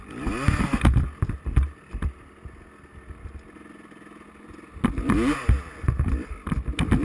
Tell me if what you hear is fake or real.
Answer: real